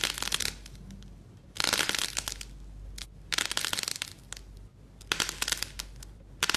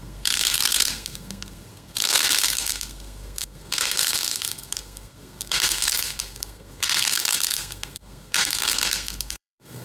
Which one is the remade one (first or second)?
second